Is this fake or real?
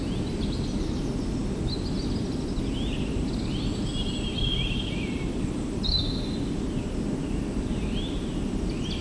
real